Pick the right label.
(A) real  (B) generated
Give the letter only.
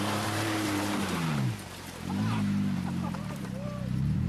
B